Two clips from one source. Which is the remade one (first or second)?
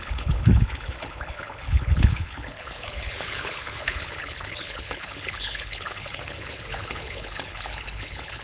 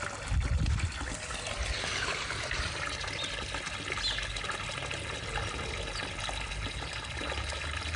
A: first